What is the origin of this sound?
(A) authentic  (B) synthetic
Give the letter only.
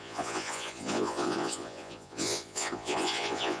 B